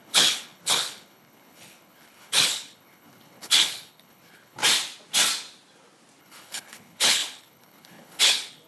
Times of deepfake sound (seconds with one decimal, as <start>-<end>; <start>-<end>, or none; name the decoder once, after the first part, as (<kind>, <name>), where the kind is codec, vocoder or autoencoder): 0.0-4.6 (codec, HILCodec); 6.2-8.7